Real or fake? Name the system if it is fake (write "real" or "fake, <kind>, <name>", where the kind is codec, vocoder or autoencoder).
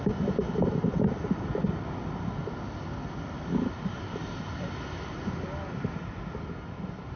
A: real